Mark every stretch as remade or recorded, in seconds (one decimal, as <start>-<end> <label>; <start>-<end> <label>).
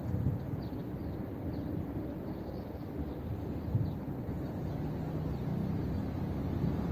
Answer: 0.0-6.9 recorded